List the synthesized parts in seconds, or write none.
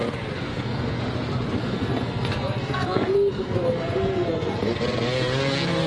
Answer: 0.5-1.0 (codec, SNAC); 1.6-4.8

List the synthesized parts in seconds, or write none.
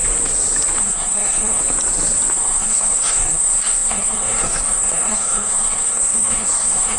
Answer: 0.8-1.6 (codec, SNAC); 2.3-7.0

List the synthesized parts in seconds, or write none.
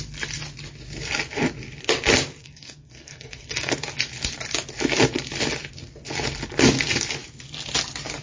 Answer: 2.4-3.7 (codec, SNAC)